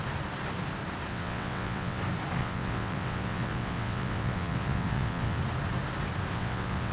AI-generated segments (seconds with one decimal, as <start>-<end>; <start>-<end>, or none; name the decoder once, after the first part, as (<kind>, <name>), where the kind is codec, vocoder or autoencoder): 1.1-2.0 (vocoder, WaveNeXt); 2.4-5.4; 6.3-6.9